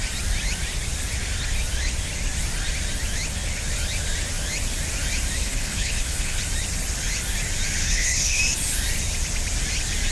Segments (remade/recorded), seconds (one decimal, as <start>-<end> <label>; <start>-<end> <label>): 0.0-5.4 recorded; 5.4-6.4 remade; 6.4-7.8 recorded; 7.8-8.4 remade; 8.4-10.1 recorded